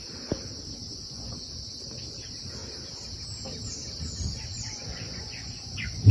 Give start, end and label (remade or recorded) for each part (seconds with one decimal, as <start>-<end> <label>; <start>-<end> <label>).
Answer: 0.0-0.9 recorded; 0.9-1.5 remade; 1.5-4.5 recorded; 4.5-6.1 remade